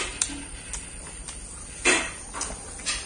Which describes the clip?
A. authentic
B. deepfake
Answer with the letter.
A